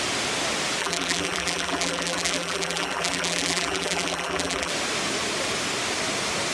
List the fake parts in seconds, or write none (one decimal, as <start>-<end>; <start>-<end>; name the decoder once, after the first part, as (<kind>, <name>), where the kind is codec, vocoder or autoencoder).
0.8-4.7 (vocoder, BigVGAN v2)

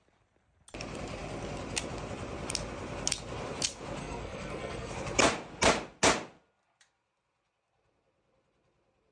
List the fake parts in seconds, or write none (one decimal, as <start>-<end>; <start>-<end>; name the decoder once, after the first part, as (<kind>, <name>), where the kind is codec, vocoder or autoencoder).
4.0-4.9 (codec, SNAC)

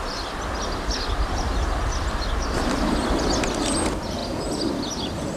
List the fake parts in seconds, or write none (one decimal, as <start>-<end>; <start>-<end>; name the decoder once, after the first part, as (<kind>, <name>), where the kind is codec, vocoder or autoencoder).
none

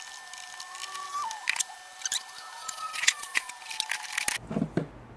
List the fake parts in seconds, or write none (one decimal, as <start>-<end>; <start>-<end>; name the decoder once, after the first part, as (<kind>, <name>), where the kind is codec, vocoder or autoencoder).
2.6-3.5 (vocoder, Vocos)

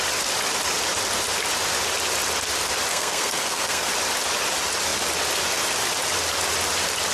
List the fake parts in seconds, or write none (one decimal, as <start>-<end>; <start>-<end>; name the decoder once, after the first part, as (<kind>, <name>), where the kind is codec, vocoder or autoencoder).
2.9-3.9 (codec, SNAC)

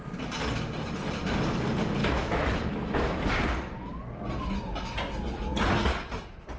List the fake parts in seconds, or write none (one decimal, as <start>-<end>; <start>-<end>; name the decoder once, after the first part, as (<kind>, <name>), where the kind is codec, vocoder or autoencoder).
2.0-3.3 (autoencoder, DAC-VAE)

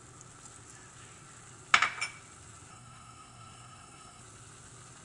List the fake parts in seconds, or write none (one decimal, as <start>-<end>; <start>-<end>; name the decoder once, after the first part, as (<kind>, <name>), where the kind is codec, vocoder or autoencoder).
2.7-4.2 (codec, SNAC)